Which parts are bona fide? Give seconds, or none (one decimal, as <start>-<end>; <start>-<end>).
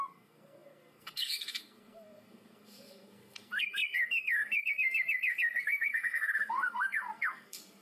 none